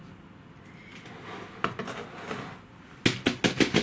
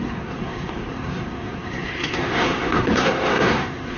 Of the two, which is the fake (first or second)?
second